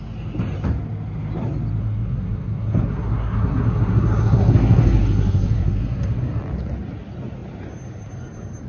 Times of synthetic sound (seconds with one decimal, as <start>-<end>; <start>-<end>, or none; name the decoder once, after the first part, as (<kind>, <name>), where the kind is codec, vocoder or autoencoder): 1.8-6.4 (codec, SNAC)